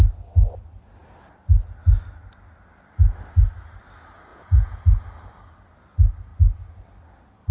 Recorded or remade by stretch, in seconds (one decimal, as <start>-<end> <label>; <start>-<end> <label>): 0.0-4.3 recorded; 4.3-4.8 remade; 4.8-7.5 recorded